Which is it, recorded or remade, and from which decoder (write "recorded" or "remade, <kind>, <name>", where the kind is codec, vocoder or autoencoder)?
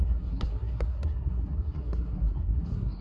remade, codec, SNAC